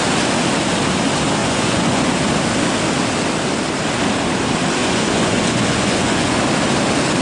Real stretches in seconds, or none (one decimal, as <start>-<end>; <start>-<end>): 0.0-1.4; 2.1-4.8; 6.4-7.2